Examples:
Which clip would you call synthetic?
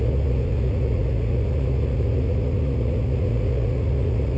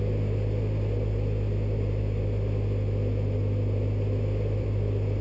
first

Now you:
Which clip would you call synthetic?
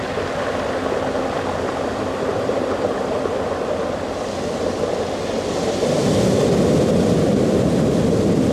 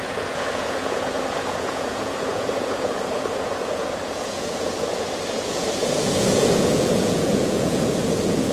second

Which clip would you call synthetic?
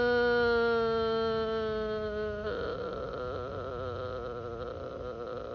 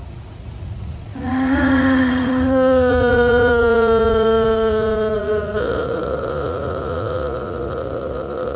second